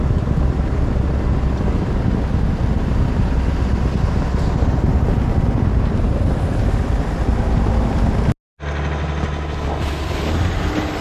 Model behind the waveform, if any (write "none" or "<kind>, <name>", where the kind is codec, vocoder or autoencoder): none